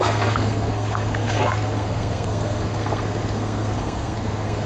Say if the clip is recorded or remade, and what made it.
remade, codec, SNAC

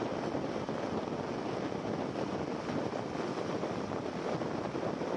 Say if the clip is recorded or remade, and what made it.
recorded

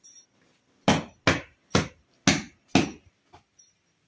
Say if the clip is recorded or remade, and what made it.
recorded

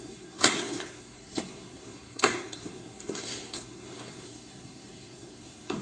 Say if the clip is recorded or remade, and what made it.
remade, codec, SNAC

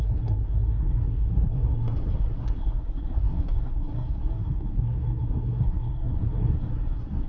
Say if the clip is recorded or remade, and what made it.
remade, codec, SNAC